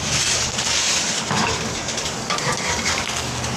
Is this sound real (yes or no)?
no